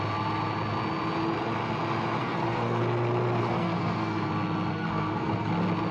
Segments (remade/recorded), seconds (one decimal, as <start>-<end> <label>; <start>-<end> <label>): 0.0-2.2 recorded; 2.2-2.8 remade; 2.8-3.4 recorded; 3.4-4.3 remade; 4.3-4.7 recorded; 4.7-5.5 remade; 5.5-5.9 recorded